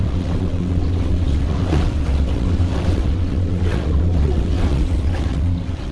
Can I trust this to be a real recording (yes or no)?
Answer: no